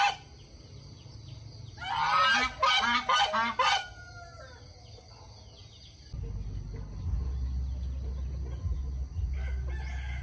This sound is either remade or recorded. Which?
recorded